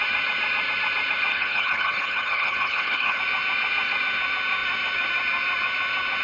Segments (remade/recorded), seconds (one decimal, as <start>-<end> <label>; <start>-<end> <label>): 0.0-1.3 recorded; 1.3-3.2 remade; 3.2-6.2 recorded